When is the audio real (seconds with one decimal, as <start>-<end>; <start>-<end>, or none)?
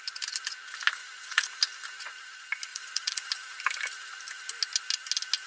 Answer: 0.0-1.0; 1.6-2.7; 3.3-5.5